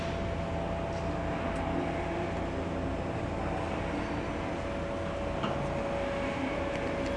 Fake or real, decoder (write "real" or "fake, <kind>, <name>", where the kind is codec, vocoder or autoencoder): real